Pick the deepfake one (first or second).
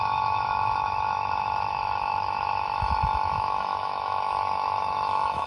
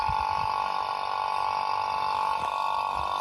first